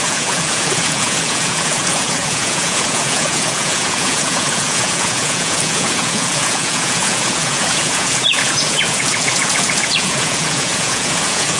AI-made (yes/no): yes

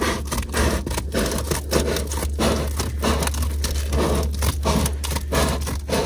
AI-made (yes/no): no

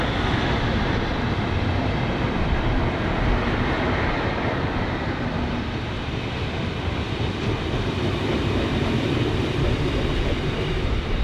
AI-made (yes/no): yes